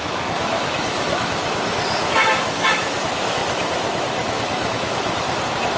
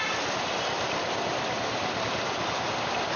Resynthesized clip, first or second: first